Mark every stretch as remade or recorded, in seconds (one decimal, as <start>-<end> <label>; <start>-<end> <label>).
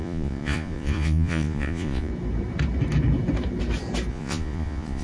0.0-2.1 remade; 2.1-4.1 recorded; 4.1-5.0 remade